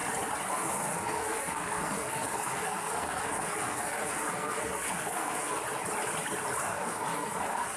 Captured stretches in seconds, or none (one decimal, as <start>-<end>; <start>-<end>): 0.0-0.5; 5.6-6.6